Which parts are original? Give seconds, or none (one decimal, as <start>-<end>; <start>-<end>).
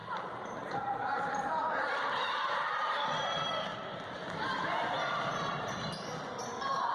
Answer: 3.7-5.3